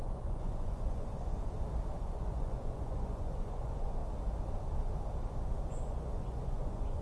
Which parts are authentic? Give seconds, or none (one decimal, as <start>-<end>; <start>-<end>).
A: 1.3-2.0; 4.0-5.7